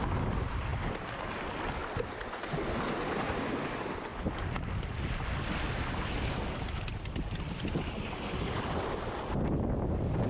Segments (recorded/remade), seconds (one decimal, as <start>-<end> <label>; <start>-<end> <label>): 0.0-10.3 recorded